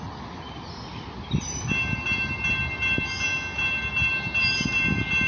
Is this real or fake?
real